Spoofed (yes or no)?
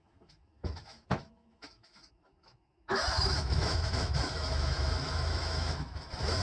yes